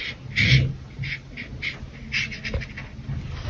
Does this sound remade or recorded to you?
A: recorded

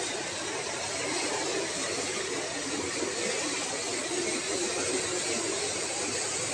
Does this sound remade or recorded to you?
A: recorded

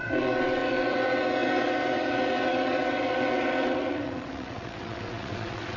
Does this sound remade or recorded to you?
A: remade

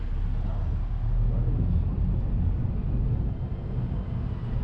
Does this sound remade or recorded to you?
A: recorded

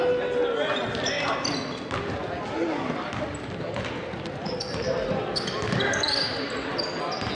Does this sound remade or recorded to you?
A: recorded